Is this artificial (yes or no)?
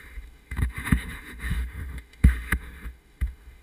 yes